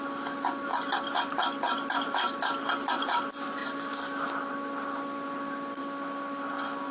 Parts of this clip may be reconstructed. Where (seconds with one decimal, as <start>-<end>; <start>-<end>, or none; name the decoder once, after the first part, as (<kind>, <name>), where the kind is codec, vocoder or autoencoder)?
none